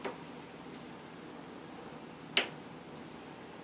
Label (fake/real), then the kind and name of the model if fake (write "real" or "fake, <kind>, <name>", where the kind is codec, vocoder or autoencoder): real